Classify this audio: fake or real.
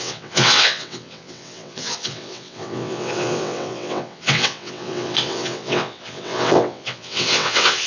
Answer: fake